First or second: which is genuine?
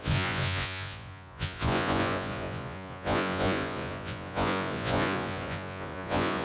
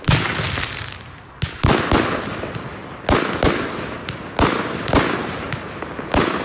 second